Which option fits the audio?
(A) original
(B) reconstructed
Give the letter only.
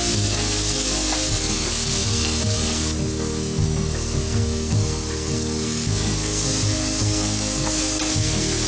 B